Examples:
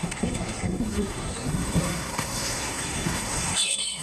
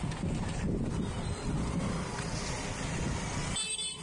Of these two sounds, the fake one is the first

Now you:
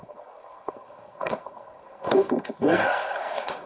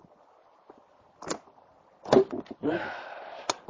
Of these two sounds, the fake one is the first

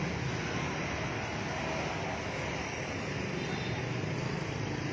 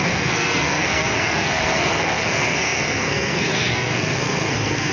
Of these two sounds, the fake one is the second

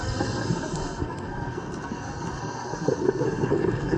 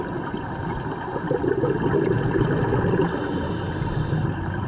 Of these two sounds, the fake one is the first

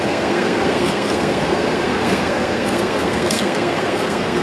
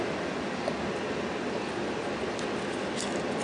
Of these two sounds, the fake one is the first